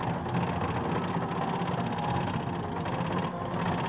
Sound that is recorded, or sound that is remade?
recorded